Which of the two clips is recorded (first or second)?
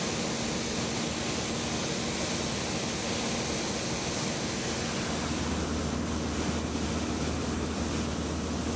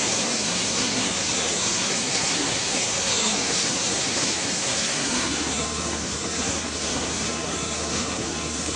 first